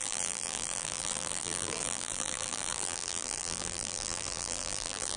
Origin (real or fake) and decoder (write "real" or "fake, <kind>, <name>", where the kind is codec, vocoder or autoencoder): fake, vocoder, BigVGAN v2